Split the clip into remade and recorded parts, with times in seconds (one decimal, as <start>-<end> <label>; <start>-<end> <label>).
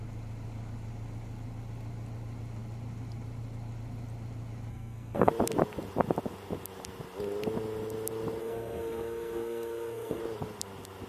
0.0-4.7 recorded; 4.7-5.3 remade; 5.3-8.4 recorded; 8.4-10.2 remade; 10.2-11.1 recorded